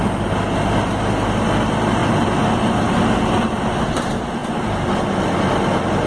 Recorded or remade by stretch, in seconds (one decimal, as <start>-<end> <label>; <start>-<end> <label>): 0.0-6.1 recorded